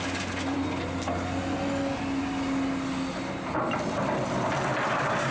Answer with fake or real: real